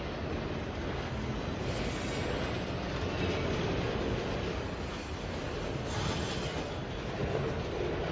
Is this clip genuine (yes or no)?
yes